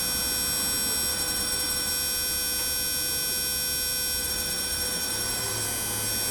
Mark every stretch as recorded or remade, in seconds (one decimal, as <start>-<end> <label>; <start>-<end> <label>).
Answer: 0.0-1.1 recorded; 1.1-1.9 remade; 1.9-4.2 recorded; 4.2-5.6 remade; 5.6-6.3 recorded